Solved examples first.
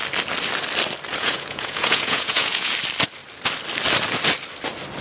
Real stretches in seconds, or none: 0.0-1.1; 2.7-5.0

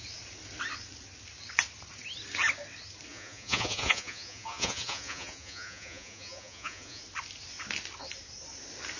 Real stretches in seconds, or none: 0.0-3.1; 7.0-9.0

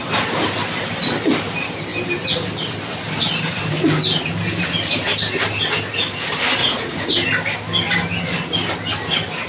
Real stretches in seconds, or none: 0.0-6.6; 7.1-9.5